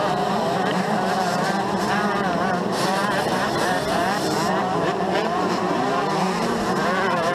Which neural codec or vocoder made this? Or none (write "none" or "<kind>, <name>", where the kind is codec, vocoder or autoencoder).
vocoder, BigVGAN v2